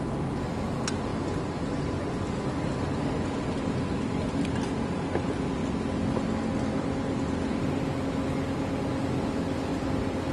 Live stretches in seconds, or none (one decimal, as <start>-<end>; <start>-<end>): 0.0-10.3